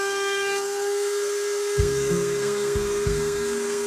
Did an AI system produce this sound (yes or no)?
yes